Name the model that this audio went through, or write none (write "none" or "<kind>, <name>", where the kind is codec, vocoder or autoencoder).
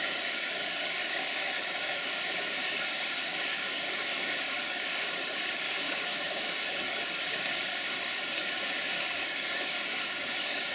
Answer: codec, DAC